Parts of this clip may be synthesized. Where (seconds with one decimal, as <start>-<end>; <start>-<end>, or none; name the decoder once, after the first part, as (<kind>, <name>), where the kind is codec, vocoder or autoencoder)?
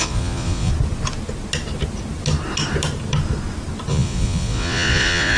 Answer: 0.0-0.7 (vocoder, Vocos); 3.9-5.4